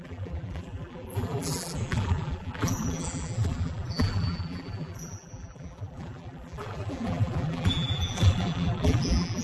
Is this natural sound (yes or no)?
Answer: no